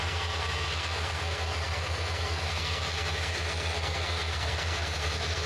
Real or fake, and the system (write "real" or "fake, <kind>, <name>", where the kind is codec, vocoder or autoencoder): fake, codec, SNAC